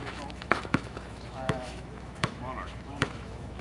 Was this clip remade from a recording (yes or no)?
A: yes